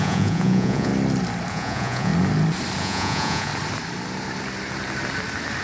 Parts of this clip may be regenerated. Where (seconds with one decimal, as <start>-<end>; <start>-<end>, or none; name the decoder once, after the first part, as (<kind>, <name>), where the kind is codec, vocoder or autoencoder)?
0.0-0.9 (vocoder, Vocos); 1.5-2.1; 2.8-3.5